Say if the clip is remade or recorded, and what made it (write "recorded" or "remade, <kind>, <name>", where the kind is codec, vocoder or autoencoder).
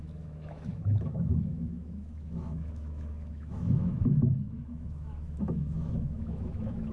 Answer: remade, autoencoder, DAC-VAE